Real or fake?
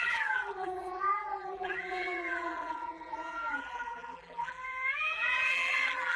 fake